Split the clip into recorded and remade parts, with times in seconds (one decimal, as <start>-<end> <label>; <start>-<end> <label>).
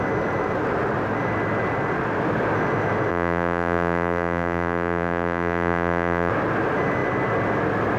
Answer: 0.0-3.1 recorded; 3.1-6.3 remade; 6.3-8.0 recorded